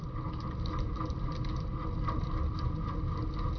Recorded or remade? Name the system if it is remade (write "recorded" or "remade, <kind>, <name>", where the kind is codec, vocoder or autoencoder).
recorded